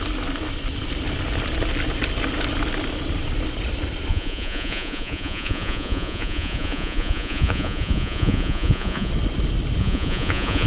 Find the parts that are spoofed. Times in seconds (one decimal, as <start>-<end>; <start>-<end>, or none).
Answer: 4.1-9.1; 9.8-10.7